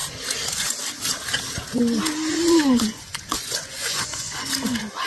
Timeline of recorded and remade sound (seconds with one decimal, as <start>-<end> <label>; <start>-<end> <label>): 0.0-2.3 recorded; 2.3-4.5 remade; 4.5-5.1 recorded